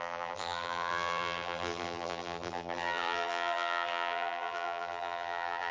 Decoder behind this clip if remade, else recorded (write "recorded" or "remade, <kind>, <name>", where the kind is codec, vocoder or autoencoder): remade, vocoder, BigVGAN v2